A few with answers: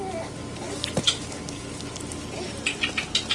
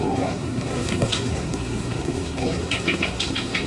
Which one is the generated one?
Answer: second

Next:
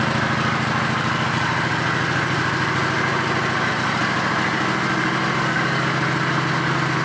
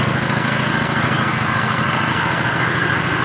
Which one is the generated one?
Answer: second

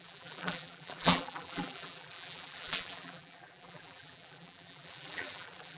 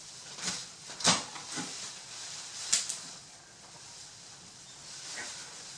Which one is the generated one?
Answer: first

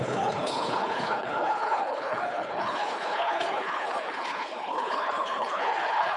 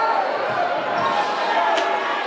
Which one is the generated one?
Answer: first